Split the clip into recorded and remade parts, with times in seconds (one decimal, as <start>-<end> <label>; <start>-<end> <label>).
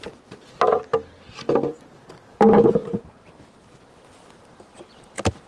0.0-2.8 recorded; 2.8-3.8 remade; 3.8-4.2 recorded; 4.2-5.5 remade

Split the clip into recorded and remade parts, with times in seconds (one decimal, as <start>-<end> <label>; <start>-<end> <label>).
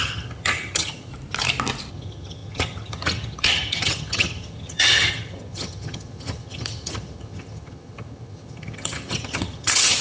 0.0-1.1 remade; 1.1-1.9 recorded; 1.9-10.0 remade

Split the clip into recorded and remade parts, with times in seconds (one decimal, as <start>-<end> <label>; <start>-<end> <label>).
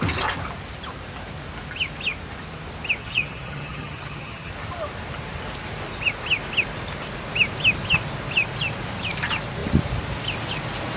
0.0-3.0 recorded; 3.0-4.5 remade; 4.5-11.0 recorded